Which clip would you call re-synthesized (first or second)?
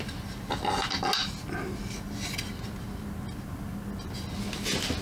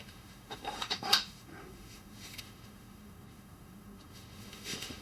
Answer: second